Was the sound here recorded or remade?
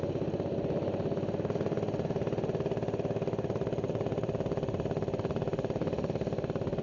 recorded